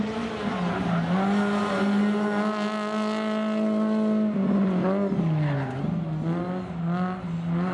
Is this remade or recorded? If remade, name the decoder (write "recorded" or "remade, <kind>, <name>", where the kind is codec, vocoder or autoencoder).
recorded